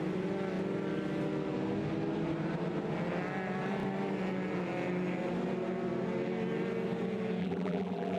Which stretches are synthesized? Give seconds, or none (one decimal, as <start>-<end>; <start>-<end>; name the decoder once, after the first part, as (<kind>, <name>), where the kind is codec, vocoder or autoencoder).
7.4-8.2 (vocoder, BigVGAN v2)